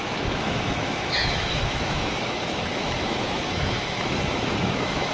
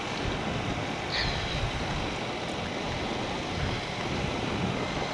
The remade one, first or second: first